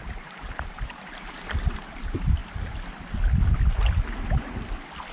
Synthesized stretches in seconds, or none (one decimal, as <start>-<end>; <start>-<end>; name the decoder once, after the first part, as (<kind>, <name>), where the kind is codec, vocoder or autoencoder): 0.0-1.1 (vocoder, BigVGAN v2)